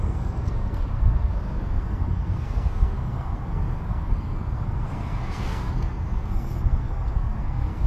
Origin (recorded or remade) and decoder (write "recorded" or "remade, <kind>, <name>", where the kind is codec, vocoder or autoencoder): remade, codec, SNAC